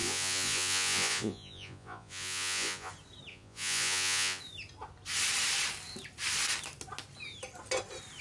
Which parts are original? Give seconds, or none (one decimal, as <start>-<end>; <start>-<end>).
2.9-3.3; 4.4-8.2

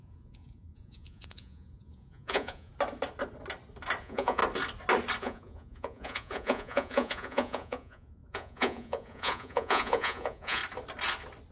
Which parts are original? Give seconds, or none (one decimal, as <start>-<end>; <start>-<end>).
2.7-4.0; 4.4-5.2; 10.6-11.5

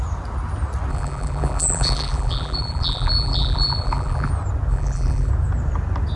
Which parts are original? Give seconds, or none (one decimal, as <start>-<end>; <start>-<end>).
0.0-0.9; 4.3-4.7; 5.3-6.2

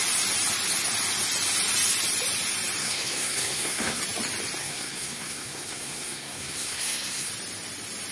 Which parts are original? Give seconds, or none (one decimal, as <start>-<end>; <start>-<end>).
0.0-2.8; 4.0-4.6; 7.3-8.1

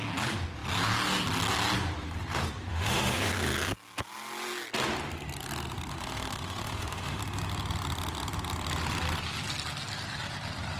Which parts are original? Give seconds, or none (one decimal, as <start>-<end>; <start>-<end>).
0.0-2.7; 3.3-5.9; 7.2-10.8

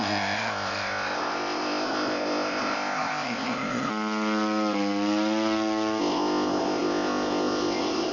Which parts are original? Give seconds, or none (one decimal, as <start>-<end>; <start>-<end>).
3.9-6.0

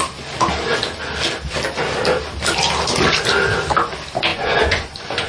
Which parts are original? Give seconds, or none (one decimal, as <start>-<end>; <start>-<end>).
0.0-4.3

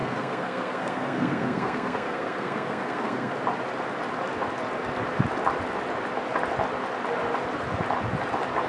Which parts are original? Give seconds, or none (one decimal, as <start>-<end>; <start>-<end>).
3.4-8.7